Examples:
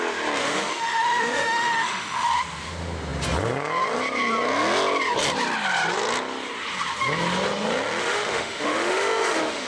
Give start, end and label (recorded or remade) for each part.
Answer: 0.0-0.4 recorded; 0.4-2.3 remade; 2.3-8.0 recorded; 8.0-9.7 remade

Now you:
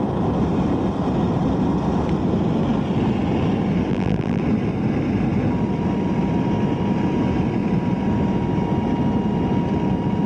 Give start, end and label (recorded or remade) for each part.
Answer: 0.0-3.9 recorded; 3.9-4.4 remade; 4.4-10.3 recorded

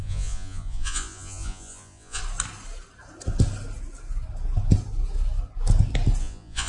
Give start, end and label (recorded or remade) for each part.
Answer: 0.0-2.2 remade; 2.2-6.2 recorded; 6.2-6.7 remade

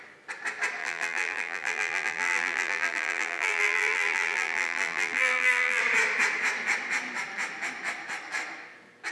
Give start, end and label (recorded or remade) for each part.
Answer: 0.0-0.8 recorded; 0.8-5.8 remade; 5.8-9.1 recorded

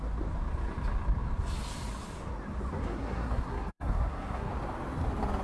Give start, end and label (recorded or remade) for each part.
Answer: 0.0-2.8 recorded; 2.8-4.5 remade; 4.5-5.4 recorded